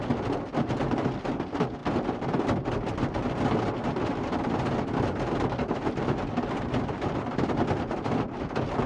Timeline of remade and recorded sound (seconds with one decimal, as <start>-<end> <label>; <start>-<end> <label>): 0.0-1.8 remade; 1.8-3.8 recorded; 3.8-8.9 remade